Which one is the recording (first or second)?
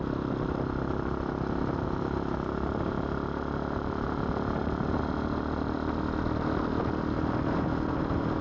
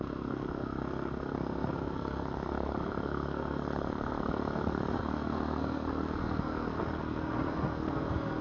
first